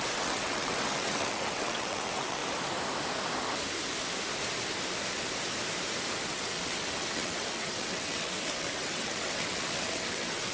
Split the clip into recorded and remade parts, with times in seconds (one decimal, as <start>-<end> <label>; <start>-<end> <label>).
0.0-2.4 remade; 2.4-6.3 recorded; 6.3-10.5 remade